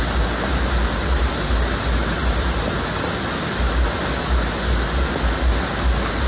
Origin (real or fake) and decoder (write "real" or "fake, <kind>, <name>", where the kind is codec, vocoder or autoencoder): real